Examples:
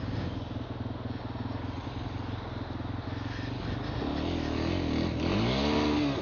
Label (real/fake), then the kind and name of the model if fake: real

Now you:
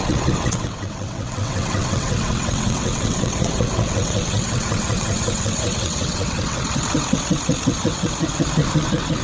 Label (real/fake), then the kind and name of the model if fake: fake, vocoder, WaveNeXt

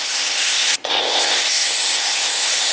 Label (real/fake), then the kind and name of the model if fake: fake, codec, ZipCodec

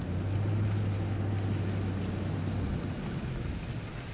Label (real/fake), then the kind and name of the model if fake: real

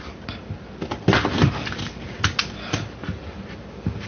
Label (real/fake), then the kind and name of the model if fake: real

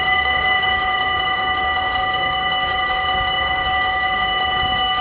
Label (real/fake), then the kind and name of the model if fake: fake, codec, DAC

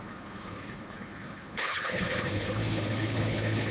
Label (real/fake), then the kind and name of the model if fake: fake, codec, HILCodec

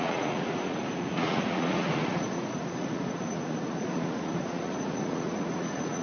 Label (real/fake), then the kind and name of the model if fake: fake, vocoder, Vocos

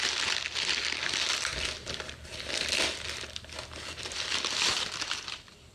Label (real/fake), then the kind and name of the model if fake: real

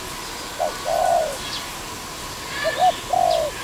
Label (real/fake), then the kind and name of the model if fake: real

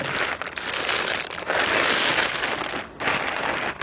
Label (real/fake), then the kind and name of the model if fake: real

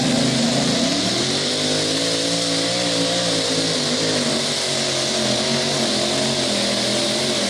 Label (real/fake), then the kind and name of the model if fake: real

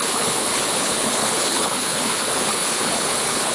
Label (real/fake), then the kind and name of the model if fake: fake, codec, HILCodec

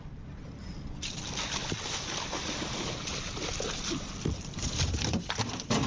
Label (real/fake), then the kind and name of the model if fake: real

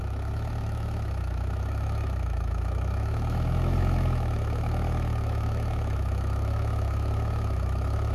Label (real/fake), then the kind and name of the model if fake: fake, autoencoder, DAC-VAE